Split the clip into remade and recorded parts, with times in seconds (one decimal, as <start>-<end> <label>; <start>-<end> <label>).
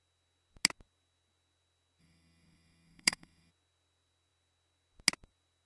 0.0-2.0 recorded; 2.0-3.5 remade; 3.5-5.7 recorded